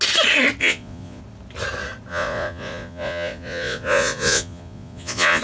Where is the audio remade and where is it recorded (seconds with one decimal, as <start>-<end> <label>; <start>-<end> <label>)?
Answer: 0.0-0.6 recorded; 0.6-1.2 remade; 1.2-2.1 recorded; 2.1-5.4 remade